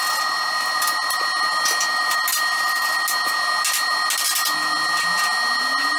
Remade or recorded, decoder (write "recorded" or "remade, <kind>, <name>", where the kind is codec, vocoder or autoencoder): recorded